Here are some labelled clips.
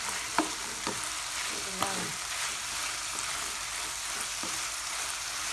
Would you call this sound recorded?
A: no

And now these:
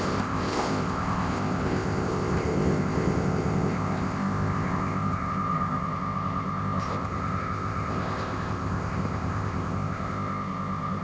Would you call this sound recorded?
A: no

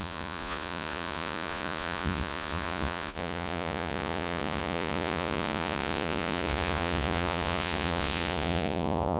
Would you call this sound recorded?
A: no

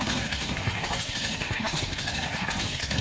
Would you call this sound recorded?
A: no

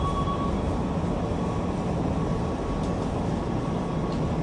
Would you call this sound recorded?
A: yes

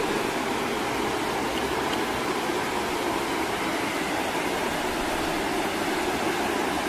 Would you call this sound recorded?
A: yes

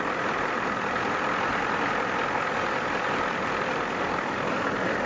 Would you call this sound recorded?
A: yes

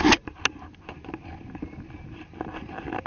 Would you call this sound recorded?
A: yes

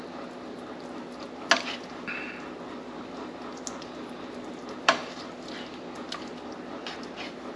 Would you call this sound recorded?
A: yes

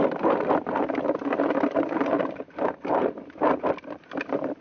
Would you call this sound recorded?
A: yes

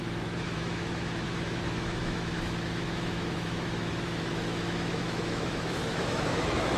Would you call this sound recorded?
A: no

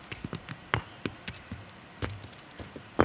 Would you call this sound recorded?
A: yes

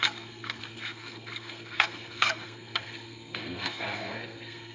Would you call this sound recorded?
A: no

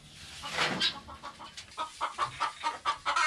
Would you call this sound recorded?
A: yes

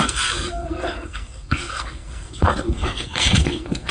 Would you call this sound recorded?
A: no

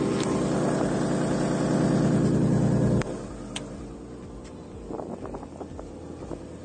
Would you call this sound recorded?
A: yes